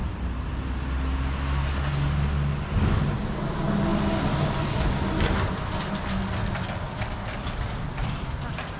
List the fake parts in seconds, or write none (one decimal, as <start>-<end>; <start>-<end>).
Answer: 0.0-0.5; 3.9-5.6; 6.4-7.6